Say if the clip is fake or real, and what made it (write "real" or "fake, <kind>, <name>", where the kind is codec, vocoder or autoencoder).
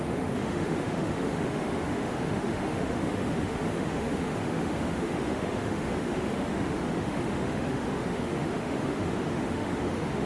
fake, autoencoder, DAC-VAE